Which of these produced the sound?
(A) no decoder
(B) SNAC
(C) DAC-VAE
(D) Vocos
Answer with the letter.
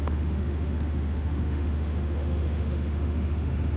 C